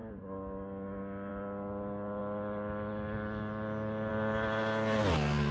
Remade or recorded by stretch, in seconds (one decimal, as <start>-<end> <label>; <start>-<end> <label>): 0.0-5.5 recorded